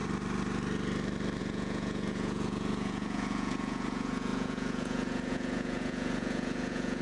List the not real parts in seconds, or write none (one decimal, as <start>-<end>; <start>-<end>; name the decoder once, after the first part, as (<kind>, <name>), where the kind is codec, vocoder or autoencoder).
1.4-7.0 (vocoder, Vocos)